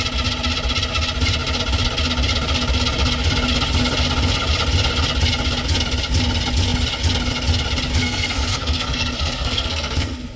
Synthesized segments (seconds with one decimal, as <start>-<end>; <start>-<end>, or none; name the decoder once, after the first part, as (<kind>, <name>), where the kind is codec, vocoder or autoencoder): 8.0-10.4 (codec, SNAC)